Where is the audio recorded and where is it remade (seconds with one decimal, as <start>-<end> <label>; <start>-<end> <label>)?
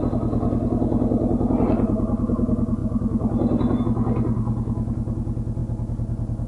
0.0-6.5 recorded